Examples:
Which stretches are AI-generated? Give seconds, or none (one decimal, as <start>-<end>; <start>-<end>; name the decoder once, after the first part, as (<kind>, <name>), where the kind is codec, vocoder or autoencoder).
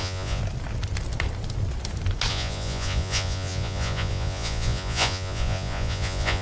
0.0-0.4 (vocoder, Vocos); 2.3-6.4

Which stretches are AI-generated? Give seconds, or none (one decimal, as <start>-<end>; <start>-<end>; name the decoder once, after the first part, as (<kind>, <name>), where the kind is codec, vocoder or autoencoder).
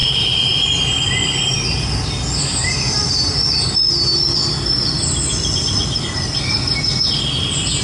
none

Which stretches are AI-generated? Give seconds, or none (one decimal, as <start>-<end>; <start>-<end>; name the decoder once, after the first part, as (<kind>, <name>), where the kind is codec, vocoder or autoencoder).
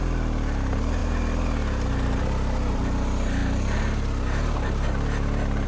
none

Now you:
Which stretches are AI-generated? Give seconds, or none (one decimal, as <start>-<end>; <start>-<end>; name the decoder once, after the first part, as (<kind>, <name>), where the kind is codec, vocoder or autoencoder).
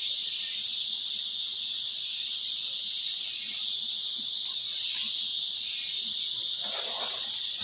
5.3-5.9 (vocoder, BigVGAN v2)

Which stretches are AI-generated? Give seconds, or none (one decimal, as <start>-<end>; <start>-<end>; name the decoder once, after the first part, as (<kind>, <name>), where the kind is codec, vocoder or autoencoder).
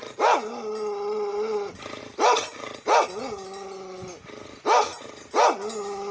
none